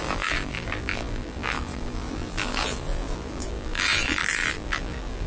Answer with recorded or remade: remade